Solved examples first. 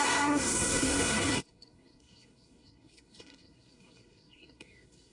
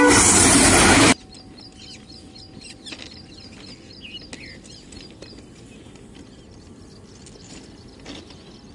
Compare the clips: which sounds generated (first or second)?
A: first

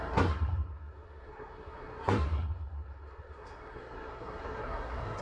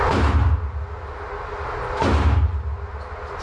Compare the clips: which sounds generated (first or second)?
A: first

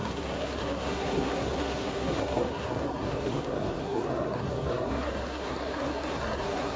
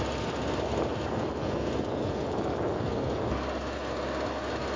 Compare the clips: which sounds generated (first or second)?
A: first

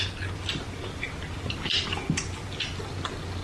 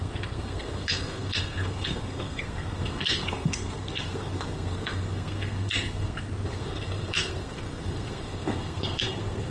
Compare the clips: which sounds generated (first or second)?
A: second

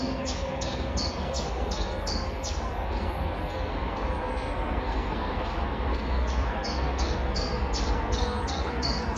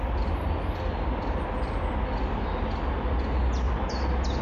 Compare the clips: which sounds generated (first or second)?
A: first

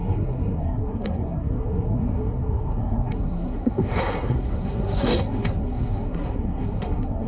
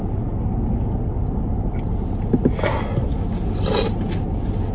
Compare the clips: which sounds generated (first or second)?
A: first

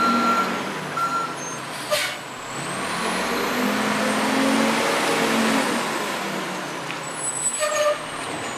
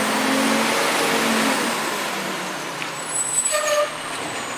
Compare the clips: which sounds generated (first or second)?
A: second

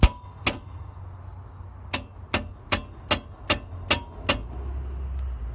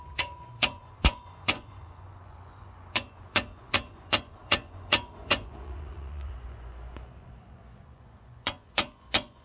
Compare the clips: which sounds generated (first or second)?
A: second